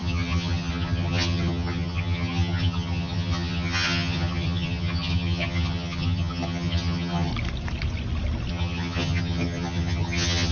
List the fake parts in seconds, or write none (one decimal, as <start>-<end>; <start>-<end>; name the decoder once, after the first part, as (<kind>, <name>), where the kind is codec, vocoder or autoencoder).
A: 0.0-7.3 (vocoder, HiFi-GAN); 8.5-10.5